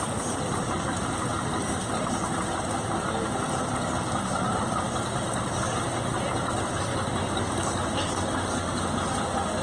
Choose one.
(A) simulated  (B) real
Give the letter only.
B